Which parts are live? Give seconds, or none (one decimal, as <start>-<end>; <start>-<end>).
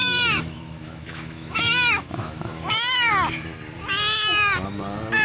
3.1-5.2